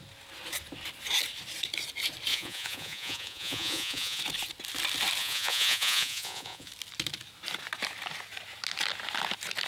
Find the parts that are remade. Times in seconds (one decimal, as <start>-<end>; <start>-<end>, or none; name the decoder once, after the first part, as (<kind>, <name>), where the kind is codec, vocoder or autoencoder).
2.3-4.2 (vocoder, Vocos); 5.2-6.7